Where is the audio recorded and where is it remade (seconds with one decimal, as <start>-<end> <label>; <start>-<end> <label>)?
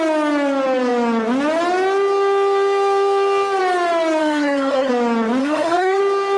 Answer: 0.0-4.2 recorded; 4.2-4.9 remade; 4.9-5.4 recorded; 5.4-6.0 remade; 6.0-6.4 recorded